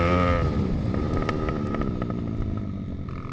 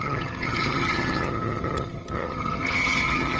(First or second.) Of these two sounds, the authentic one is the first